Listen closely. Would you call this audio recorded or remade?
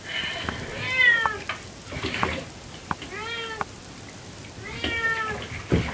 recorded